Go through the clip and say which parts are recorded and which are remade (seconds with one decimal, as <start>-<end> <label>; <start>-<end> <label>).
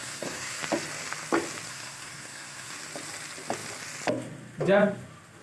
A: 0.0-0.6 remade; 0.6-1.7 recorded; 1.7-2.7 remade; 2.7-5.4 recorded